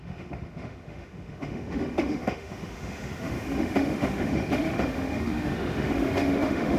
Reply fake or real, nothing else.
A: fake